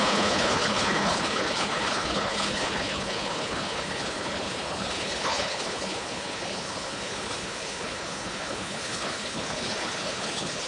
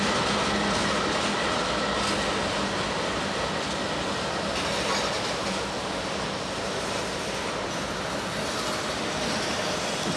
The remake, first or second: first